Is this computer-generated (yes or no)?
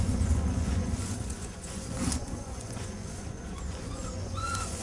yes